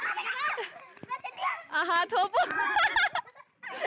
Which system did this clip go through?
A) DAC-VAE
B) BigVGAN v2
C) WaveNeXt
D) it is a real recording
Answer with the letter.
D